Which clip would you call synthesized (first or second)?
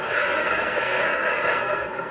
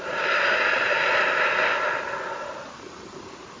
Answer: first